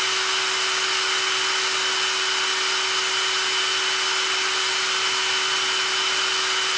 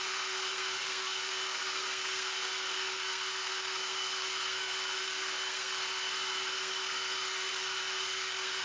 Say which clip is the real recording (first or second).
first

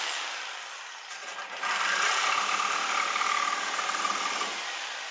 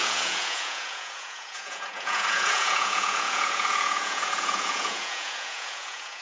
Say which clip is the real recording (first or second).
first